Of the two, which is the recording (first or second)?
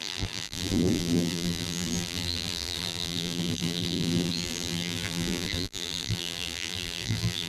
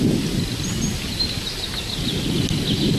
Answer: second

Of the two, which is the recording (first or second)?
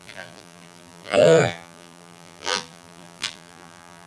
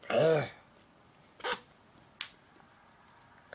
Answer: second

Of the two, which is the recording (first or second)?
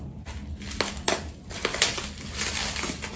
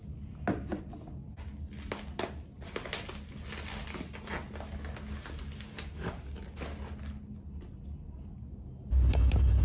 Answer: second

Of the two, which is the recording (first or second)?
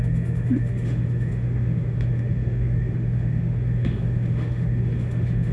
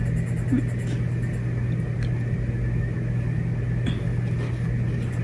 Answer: second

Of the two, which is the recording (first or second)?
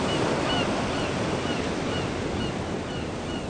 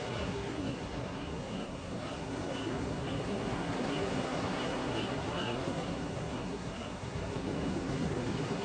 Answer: first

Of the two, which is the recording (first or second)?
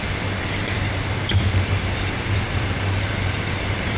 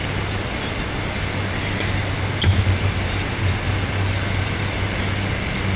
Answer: second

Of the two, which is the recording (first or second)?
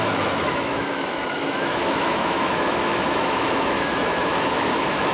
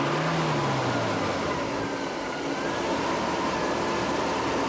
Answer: second